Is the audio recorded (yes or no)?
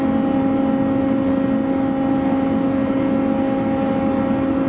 yes